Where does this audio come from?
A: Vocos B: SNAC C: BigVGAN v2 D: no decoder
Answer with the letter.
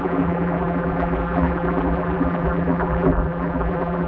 C